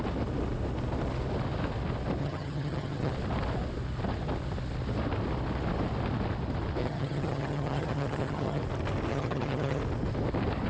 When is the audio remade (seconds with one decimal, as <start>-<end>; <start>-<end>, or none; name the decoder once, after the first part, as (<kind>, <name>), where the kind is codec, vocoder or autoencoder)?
2.2-3.1 (vocoder, HiFi-GAN); 6.8-8.6; 9.1-9.8